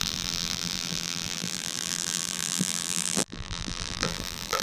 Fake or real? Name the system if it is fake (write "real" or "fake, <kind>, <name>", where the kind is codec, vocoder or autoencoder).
fake, vocoder, BigVGAN v2